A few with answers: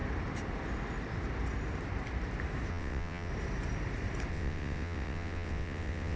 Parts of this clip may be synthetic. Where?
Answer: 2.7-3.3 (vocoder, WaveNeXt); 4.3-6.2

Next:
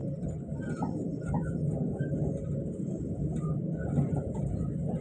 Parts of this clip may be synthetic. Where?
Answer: none

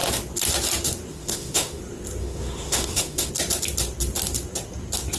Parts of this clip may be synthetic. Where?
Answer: 1.1-1.8 (autoencoder, DAC-VAE); 2.2-3.3

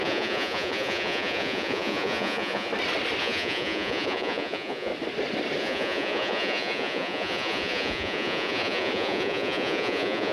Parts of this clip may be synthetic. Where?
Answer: 0.0-2.7 (vocoder, Vocos); 3.2-4.9; 5.6-10.3